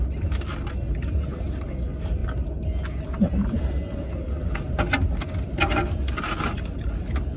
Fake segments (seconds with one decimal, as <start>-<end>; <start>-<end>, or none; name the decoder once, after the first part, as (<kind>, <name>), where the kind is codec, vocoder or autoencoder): none